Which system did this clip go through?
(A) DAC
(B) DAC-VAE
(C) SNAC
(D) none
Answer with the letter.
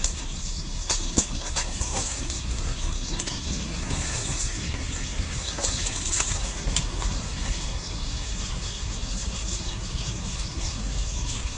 C